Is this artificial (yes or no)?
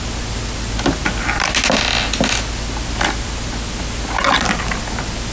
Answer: no